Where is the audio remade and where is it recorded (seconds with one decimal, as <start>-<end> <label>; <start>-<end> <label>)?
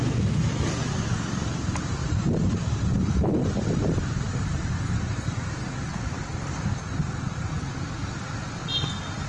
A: 0.0-2.0 recorded; 2.0-5.7 remade; 5.7-9.3 recorded